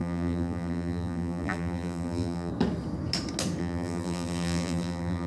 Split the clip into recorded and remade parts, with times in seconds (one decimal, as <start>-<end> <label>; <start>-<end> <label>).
0.0-2.5 remade; 2.5-3.6 recorded; 3.6-5.3 remade